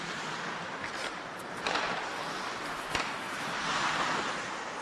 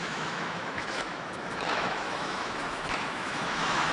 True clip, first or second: first